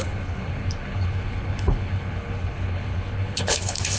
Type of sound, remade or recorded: remade